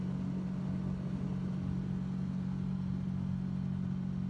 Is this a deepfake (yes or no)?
no